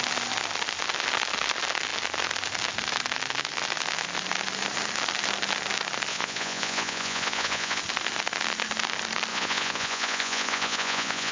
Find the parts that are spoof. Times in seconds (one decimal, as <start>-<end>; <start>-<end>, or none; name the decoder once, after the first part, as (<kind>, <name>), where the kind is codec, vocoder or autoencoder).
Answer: 6.1-7.8 (vocoder, Vocos); 9.3-11.3